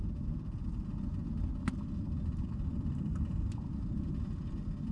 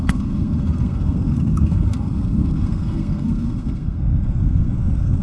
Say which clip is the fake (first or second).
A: second